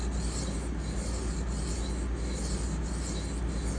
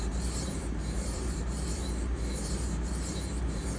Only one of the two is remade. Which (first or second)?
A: second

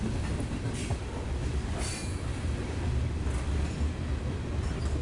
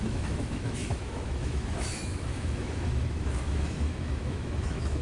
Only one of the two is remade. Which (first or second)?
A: second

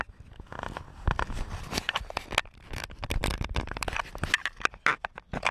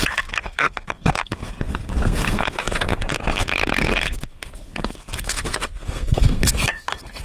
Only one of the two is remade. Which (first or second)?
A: second